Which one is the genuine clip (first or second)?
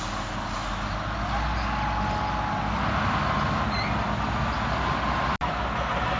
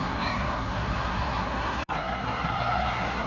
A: first